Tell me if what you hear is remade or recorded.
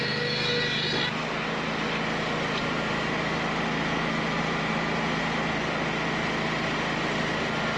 recorded